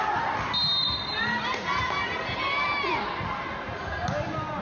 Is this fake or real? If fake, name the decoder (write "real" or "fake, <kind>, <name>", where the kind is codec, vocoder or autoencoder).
real